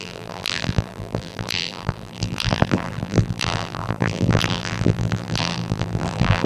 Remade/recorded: remade